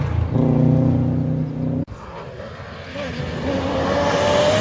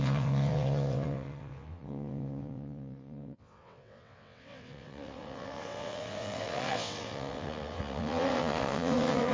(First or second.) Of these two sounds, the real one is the first